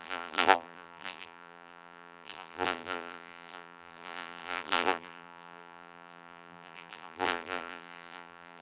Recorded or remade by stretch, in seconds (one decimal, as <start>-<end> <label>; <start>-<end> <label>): 0.0-8.6 remade